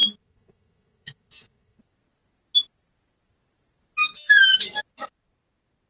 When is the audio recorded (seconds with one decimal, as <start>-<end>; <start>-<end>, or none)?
1.8-4.1; 4.8-5.9